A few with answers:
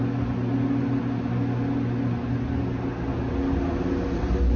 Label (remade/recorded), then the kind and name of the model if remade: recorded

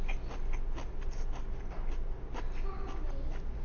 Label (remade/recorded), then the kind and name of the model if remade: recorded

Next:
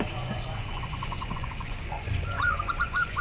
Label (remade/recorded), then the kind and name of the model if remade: remade, vocoder, Vocos